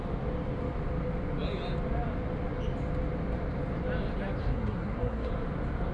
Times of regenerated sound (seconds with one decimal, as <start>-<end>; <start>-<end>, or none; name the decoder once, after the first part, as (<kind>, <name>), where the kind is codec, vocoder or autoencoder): 4.4-5.3 (codec, SNAC)

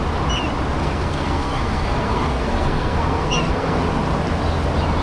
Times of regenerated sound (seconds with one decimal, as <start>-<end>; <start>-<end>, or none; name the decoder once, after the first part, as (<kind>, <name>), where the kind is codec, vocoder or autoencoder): 0.8-3.8 (codec, SNAC)

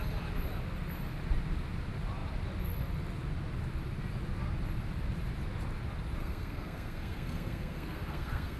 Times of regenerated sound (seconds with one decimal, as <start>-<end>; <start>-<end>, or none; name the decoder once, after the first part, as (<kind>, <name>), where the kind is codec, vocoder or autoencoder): 6.2-8.6 (codec, SNAC)

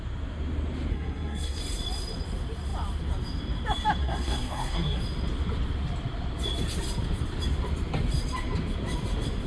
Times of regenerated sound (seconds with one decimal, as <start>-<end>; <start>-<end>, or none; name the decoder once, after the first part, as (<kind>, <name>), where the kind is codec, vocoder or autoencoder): 0.9-1.6 (codec, SNAC); 4.0-5.0

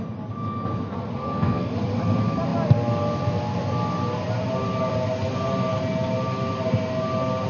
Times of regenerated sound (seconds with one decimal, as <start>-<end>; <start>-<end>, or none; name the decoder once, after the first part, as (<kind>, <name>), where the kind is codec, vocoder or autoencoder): 1.2-1.7 (codec, SNAC)